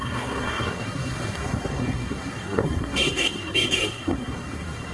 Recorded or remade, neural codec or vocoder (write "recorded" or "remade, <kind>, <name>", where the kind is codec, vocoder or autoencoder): remade, codec, SNAC